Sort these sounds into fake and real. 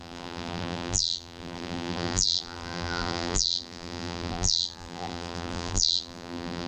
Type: fake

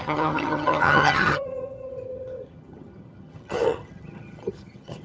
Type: fake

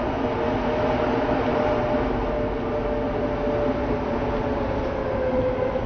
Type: real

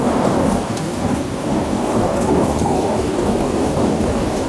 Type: fake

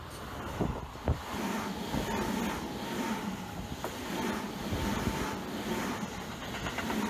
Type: real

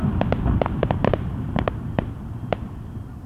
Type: fake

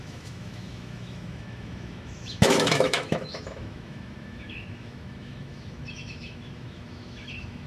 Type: fake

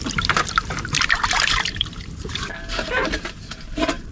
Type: fake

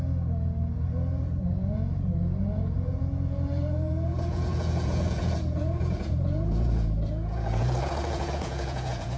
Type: fake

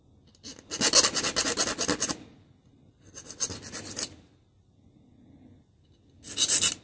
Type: real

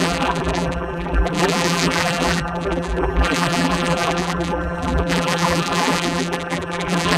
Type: fake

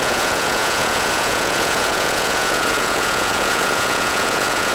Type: fake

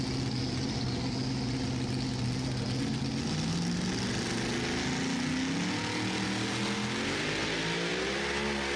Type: real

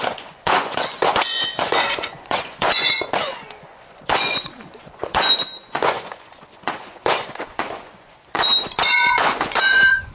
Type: fake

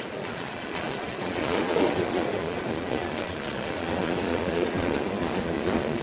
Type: fake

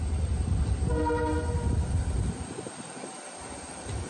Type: real